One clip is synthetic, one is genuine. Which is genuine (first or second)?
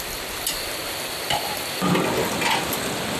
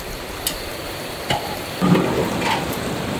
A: first